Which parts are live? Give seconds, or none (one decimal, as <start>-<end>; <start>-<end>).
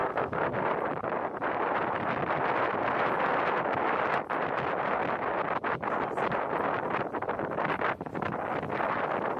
0.7-9.4